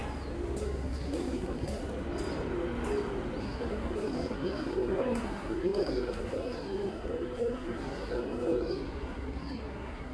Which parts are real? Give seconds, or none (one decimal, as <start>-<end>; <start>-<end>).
0.0-0.6; 1.8-3.4